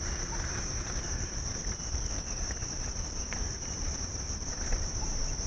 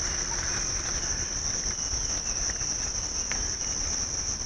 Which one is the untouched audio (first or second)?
second